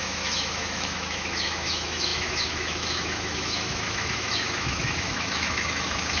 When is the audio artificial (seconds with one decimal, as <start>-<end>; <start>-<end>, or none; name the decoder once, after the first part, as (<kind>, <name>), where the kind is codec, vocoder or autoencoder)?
0.0-6.2 (autoencoder, DAC-VAE)